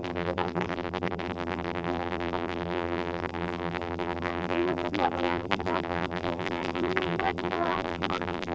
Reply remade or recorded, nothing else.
remade